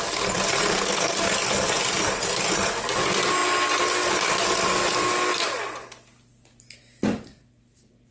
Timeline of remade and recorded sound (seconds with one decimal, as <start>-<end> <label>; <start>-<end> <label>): 0.0-0.7 recorded; 0.7-1.2 remade; 1.2-8.1 recorded